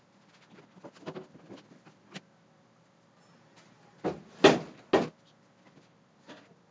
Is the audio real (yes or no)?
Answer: yes